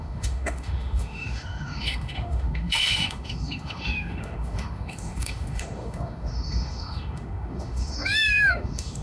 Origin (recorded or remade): remade